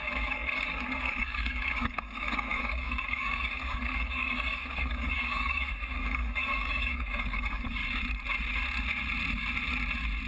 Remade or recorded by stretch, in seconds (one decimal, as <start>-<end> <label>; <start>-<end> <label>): 0.0-7.8 remade; 7.8-10.3 recorded